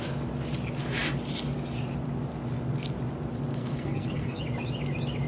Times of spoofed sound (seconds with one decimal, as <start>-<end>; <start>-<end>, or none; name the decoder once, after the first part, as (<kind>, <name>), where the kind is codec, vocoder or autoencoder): 3.5-4.4 (codec, SNAC)